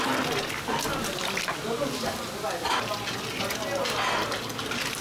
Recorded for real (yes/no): yes